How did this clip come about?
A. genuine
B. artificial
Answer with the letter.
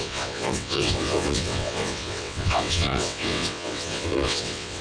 B